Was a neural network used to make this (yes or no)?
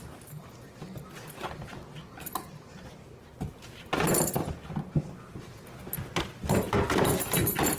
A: no